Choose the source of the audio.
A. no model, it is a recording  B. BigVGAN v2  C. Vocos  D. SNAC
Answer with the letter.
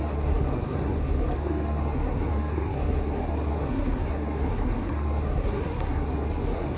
D